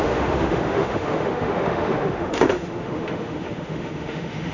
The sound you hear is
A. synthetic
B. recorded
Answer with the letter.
A